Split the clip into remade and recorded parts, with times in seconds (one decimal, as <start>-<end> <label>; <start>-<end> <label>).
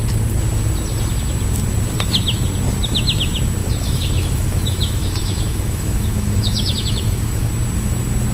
0.0-3.6 recorded; 3.6-7.5 remade; 7.5-8.3 recorded